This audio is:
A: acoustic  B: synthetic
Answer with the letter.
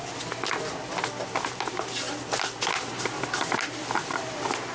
A